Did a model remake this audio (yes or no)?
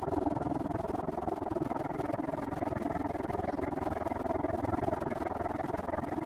yes